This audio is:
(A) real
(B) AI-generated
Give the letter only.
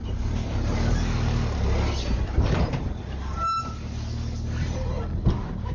A